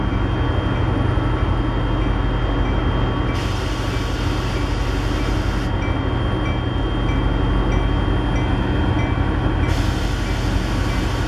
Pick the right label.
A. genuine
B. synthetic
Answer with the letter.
A